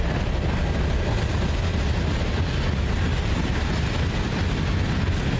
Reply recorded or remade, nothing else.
recorded